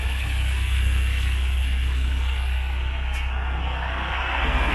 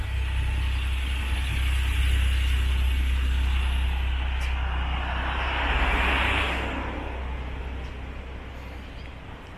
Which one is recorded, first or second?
second